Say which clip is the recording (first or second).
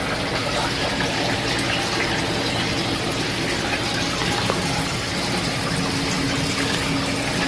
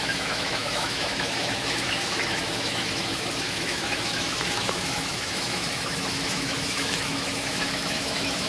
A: first